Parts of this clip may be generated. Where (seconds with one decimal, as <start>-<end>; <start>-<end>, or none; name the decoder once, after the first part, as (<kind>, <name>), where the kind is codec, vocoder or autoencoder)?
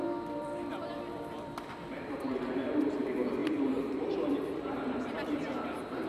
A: 0.0-6.1 (vocoder, BigVGAN v2)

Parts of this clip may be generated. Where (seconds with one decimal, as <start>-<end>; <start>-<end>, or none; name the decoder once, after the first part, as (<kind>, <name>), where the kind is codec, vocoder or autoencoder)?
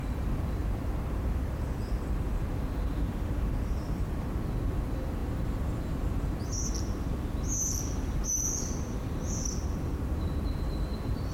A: 0.0-0.6 (vocoder, BigVGAN v2); 1.2-11.3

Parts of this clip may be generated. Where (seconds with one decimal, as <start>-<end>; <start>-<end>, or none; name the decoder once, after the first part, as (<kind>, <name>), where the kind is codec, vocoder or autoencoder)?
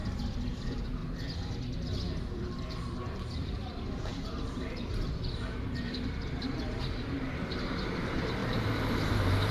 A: 0.0-1.0 (vocoder, BigVGAN v2); 2.1-9.5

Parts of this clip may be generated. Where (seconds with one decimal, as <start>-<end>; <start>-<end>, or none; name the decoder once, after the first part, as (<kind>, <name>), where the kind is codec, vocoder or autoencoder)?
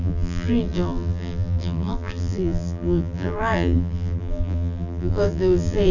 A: 0.0-5.9 (vocoder, BigVGAN v2)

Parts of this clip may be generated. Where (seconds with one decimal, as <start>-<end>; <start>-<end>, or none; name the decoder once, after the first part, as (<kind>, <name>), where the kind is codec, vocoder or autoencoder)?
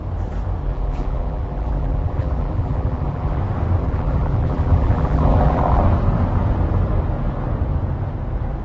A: 0.6-3.4 (vocoder, BigVGAN v2); 3.8-5.8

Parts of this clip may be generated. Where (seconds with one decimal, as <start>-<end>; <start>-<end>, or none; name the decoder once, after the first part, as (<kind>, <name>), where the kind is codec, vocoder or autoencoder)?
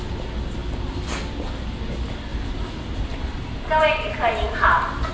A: 2.3-3.6 (vocoder, BigVGAN v2)